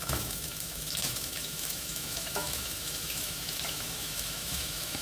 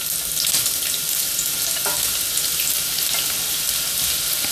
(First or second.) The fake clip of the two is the first